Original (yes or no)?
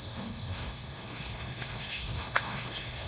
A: no